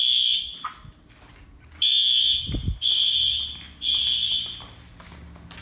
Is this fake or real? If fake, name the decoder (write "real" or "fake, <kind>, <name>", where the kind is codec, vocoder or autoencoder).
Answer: real